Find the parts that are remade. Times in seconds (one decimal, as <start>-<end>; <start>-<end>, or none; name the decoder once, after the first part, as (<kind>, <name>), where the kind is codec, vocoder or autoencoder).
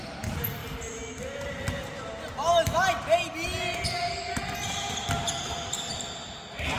none